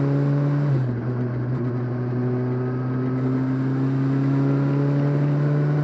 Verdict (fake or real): real